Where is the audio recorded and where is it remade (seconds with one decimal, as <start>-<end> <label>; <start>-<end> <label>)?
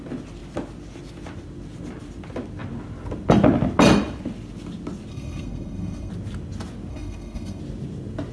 0.0-5.1 recorded; 5.1-6.1 remade; 6.1-6.9 recorded; 6.9-7.6 remade; 7.6-8.3 recorded